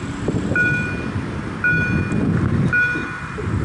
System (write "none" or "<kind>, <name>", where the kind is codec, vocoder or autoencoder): none